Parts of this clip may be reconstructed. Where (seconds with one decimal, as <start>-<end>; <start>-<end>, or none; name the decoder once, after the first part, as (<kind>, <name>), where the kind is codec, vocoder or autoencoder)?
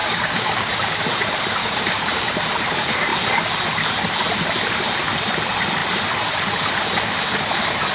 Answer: 0.0-0.7 (codec, DAC); 1.6-2.3